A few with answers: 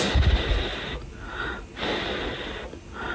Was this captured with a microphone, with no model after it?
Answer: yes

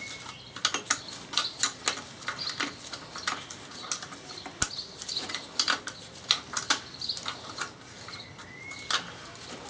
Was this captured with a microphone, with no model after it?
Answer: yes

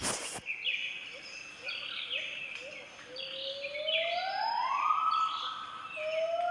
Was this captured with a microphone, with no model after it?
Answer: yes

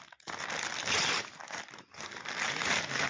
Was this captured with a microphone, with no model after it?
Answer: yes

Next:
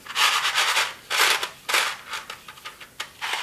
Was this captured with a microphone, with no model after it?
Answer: yes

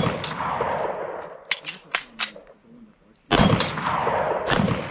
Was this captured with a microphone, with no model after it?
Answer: yes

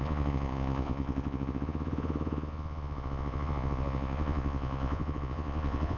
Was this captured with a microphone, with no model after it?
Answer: no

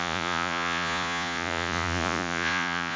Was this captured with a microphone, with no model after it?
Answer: no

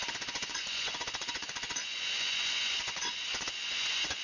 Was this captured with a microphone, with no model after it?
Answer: no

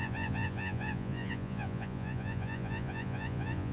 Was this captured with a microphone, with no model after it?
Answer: no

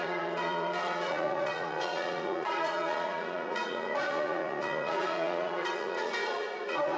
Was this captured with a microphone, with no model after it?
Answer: no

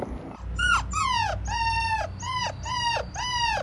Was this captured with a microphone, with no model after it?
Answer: yes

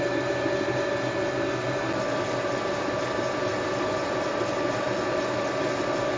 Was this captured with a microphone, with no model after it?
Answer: yes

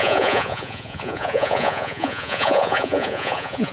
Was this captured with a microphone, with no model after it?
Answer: no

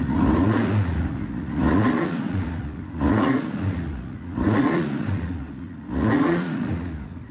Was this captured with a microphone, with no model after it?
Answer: no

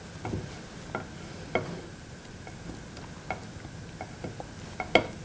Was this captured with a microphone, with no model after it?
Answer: yes